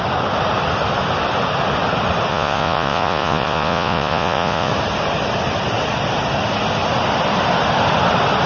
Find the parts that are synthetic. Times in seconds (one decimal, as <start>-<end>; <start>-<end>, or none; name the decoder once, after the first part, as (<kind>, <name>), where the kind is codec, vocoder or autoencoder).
2.3-4.7 (vocoder, Vocos)